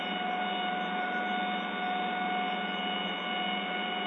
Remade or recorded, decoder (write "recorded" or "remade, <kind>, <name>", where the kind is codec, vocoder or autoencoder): recorded